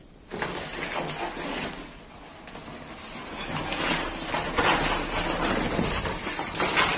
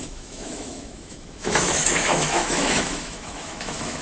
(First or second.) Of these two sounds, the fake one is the second